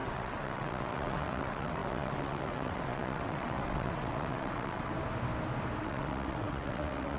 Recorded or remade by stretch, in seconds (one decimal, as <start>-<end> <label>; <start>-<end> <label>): 0.0-4.9 remade; 4.9-5.8 recorded; 5.8-7.2 remade